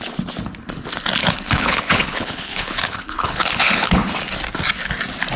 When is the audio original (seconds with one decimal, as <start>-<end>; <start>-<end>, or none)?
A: 0.0-1.2; 4.0-5.4